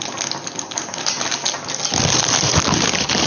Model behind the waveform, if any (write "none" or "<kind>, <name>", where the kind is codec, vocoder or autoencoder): none